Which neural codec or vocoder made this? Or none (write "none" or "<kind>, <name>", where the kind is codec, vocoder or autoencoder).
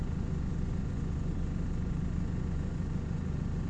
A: vocoder, Vocos